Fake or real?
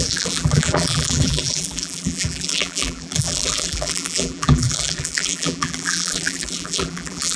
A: fake